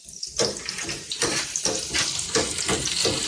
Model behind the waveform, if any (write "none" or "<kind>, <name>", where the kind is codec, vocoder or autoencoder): none